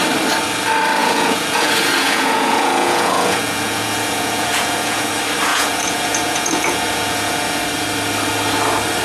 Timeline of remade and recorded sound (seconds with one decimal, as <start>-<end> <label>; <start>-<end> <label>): 0.0-1.0 recorded; 1.0-5.1 remade; 5.1-5.5 recorded; 5.5-7.6 remade; 7.6-9.0 recorded